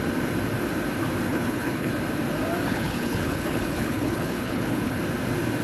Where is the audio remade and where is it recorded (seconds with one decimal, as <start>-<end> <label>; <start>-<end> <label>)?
0.0-1.3 recorded; 1.3-1.9 remade; 1.9-2.7 recorded; 2.7-5.0 remade; 5.0-5.6 recorded